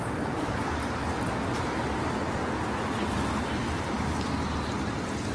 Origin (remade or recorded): recorded